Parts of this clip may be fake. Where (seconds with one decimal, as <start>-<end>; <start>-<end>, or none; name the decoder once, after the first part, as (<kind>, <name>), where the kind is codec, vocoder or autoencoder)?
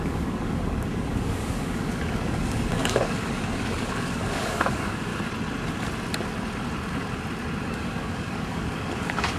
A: 0.0-5.1 (codec, DAC); 7.7-9.4